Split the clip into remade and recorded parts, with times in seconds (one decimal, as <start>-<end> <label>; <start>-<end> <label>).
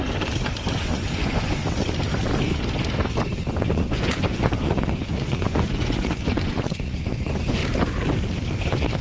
0.0-0.6 recorded; 0.6-1.6 remade; 1.6-3.6 recorded; 3.6-7.6 remade; 7.6-8.6 recorded; 8.6-9.0 remade